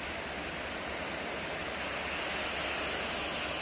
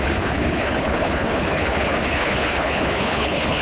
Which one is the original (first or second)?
first